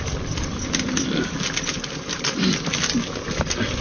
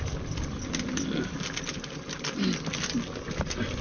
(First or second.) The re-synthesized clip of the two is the first